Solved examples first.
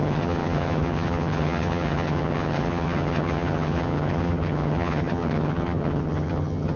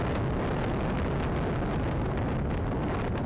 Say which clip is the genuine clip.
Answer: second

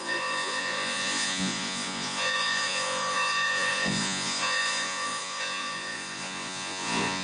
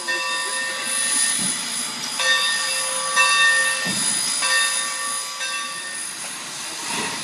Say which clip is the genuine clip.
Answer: second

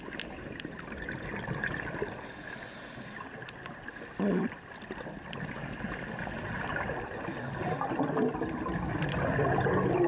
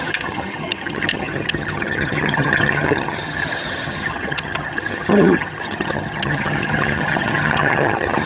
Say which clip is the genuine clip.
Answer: first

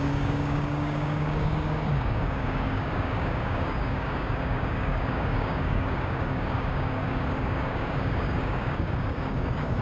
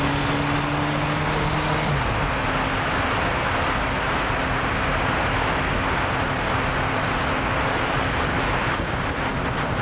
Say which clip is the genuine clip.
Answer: second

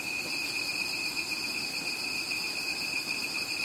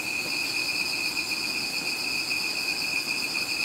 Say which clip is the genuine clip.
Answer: second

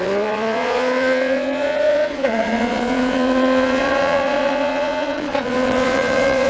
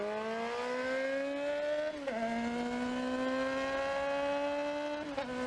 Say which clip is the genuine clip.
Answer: second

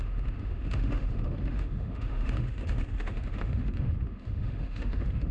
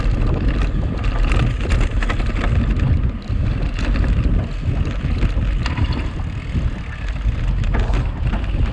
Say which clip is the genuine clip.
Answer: second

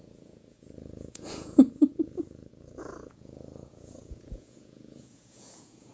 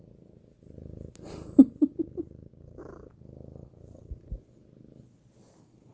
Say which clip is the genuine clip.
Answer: second